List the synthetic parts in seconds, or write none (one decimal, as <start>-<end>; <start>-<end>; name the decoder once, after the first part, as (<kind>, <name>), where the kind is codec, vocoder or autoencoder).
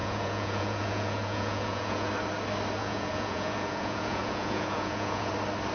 0.0-2.1 (vocoder, Vocos); 2.8-5.3